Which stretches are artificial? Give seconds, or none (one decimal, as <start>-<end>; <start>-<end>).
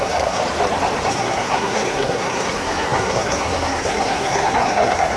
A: 0.0-0.4; 1.1-5.2